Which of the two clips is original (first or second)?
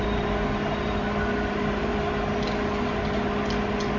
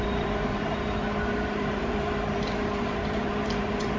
first